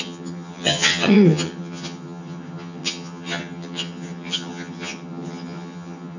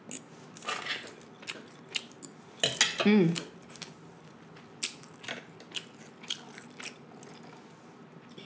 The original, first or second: second